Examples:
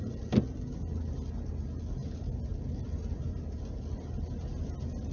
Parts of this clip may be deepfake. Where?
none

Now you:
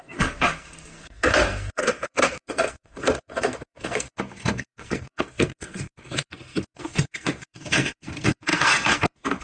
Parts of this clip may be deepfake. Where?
0.0-9.4 (codec, SNAC)

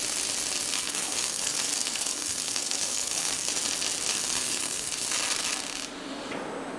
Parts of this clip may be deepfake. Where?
0.7-3.5 (codec, SNAC); 4.1-4.9

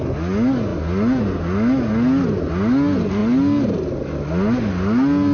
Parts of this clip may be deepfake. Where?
none